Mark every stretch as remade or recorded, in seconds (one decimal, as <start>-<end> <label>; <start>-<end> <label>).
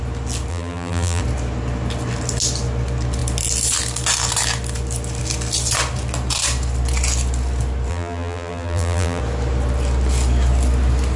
0.0-0.5 recorded; 0.5-1.2 remade; 1.2-7.9 recorded; 7.9-9.2 remade; 9.2-11.2 recorded